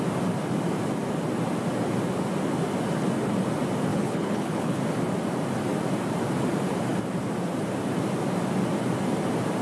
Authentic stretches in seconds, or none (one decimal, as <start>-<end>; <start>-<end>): 0.0-3.9; 4.8-9.6

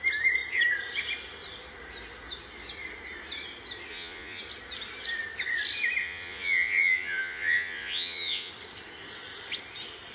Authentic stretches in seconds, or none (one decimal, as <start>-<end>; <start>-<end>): 0.0-3.9; 4.4-6.0; 8.5-10.1

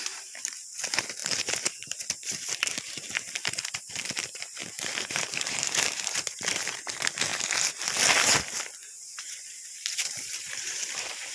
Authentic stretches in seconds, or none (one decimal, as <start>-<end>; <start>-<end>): 7.3-9.0

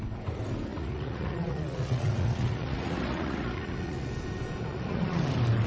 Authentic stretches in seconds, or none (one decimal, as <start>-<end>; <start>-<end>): 0.0-0.7; 4.1-4.7; 5.2-5.7